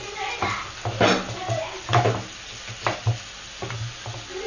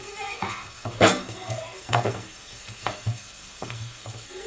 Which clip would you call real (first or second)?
first